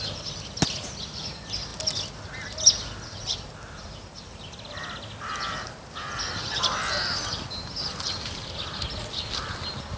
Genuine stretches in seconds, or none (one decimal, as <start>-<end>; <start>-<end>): 0.0-10.0